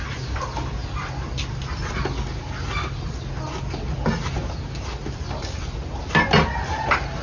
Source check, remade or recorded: recorded